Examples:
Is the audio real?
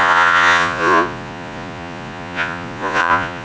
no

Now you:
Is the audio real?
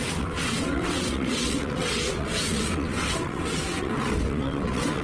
no